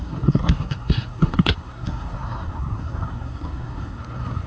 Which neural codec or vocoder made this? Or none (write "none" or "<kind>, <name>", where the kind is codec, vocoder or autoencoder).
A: codec, SNAC